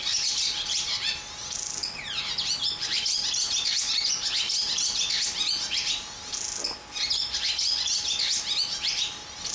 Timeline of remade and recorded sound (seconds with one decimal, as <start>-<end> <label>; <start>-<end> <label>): 0.0-9.5 recorded